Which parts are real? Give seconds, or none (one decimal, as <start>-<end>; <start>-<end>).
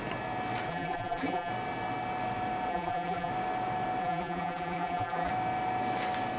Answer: 0.0-0.7; 1.5-2.7; 3.3-4.0; 5.3-6.4